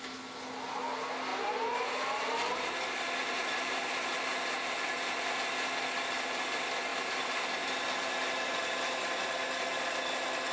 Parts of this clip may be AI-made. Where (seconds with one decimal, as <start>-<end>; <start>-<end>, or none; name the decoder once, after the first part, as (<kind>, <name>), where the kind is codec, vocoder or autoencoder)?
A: 1.3-2.7 (vocoder, BigVGAN v2); 3.2-4.1; 6.9-7.7